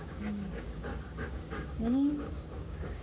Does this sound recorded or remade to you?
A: remade